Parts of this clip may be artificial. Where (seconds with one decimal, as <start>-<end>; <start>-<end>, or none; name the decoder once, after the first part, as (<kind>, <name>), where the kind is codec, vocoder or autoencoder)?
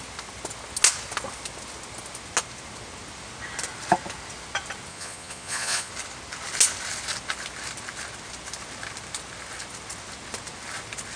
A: 4.9-5.9 (vocoder, Vocos)